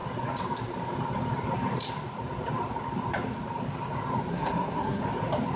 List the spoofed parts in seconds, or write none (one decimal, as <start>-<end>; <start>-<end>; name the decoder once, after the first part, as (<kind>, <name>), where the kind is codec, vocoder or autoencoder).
4.3-5.0 (codec, SNAC)